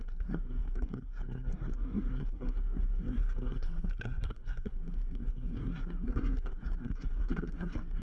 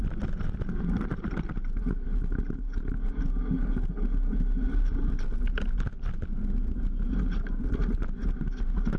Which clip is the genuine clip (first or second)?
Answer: second